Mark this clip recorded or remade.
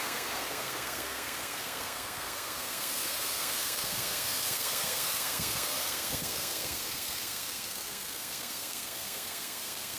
remade